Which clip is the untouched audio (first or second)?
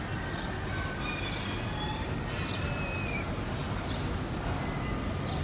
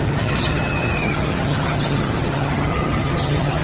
first